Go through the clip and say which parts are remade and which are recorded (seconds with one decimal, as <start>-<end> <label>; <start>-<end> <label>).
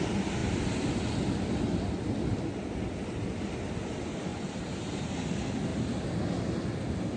0.0-4.3 recorded; 4.3-5.1 remade; 5.1-5.7 recorded; 5.7-6.2 remade; 6.2-7.2 recorded